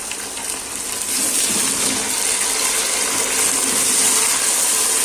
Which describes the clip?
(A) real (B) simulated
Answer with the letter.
A